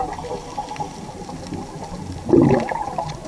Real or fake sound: real